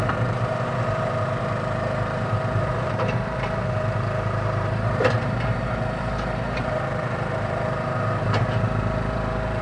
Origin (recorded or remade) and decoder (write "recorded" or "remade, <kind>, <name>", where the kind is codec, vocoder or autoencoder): remade, vocoder, BigVGAN v2